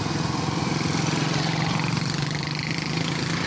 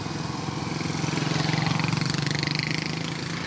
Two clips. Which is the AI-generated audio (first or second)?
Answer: first